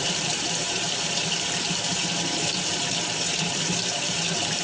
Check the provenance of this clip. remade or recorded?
remade